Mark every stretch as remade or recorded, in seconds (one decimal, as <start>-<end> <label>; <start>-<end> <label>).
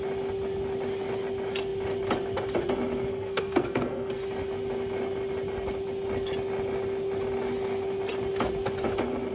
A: 0.0-3.1 recorded; 3.1-4.1 remade; 4.1-9.3 recorded